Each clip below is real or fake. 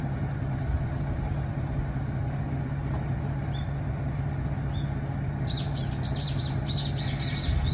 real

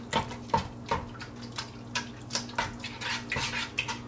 real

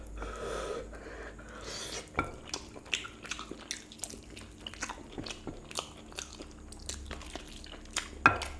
real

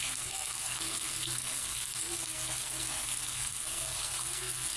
fake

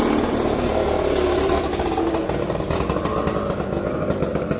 real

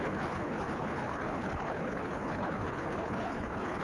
fake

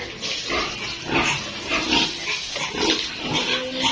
real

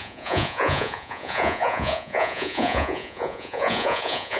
fake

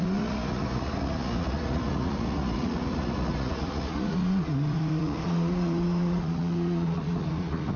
fake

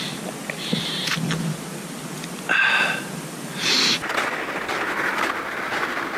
real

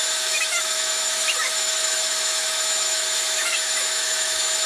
fake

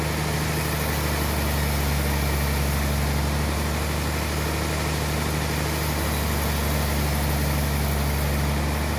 real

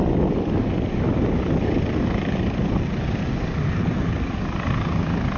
real